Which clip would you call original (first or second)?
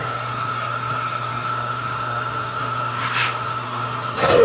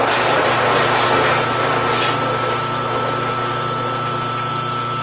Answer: second